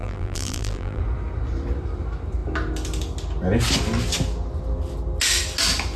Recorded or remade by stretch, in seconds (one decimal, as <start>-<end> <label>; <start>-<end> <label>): 0.0-1.0 remade; 1.0-6.0 recorded